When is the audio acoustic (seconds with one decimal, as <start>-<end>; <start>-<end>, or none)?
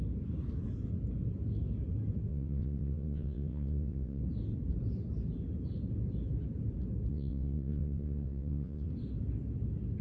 0.0-2.3; 4.2-7.1; 8.9-10.0